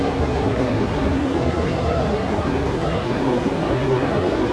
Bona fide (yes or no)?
no